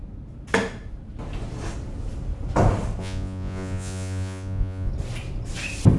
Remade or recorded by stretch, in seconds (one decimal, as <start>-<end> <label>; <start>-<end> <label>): 0.0-3.0 recorded; 3.0-4.9 remade; 4.9-6.0 recorded